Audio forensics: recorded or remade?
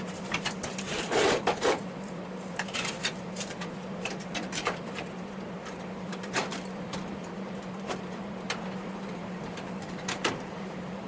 remade